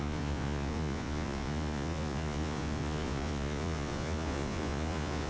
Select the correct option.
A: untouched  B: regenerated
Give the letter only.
B